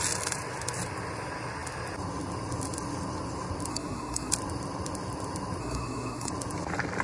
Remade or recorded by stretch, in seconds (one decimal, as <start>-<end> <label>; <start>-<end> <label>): 0.0-3.7 recorded; 3.7-4.3 remade; 4.3-5.6 recorded; 5.6-6.3 remade; 6.3-7.0 recorded